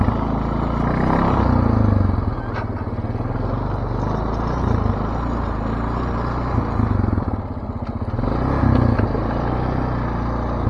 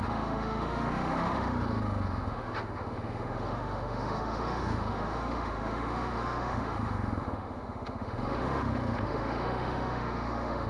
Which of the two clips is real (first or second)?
first